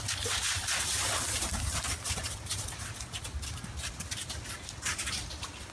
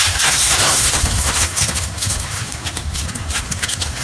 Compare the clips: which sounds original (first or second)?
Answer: first